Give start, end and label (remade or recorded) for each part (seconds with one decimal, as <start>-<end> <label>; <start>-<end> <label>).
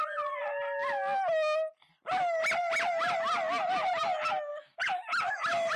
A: 0.0-0.5 remade; 0.5-4.0 recorded; 4.0-5.8 remade